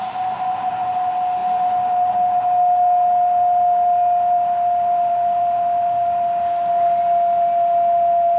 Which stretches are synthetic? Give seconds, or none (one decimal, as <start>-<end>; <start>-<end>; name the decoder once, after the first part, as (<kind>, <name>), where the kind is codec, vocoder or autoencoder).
none